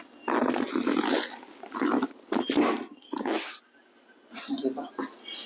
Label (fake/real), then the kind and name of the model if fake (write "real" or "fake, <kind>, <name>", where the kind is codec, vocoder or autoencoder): real